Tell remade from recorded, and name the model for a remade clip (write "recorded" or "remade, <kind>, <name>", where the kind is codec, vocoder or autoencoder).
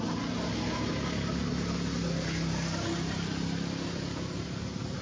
recorded